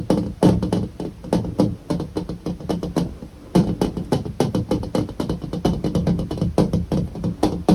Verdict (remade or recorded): recorded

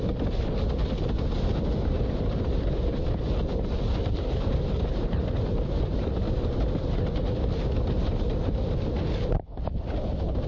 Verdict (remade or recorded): recorded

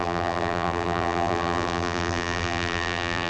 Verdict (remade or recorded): remade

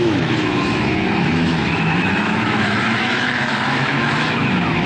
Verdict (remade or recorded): remade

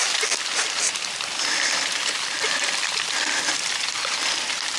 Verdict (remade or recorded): recorded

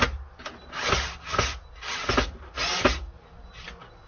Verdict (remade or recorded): recorded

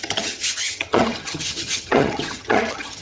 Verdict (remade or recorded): remade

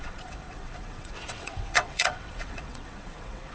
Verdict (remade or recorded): remade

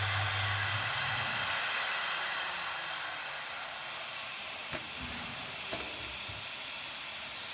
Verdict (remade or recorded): recorded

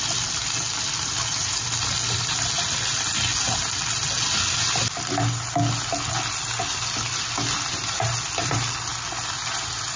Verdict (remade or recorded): recorded